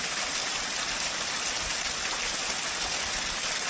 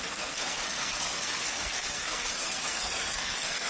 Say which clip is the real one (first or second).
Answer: first